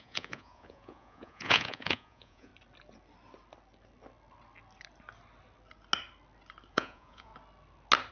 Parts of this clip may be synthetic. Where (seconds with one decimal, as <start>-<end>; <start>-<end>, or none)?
0.0-2.5; 6.7-7.3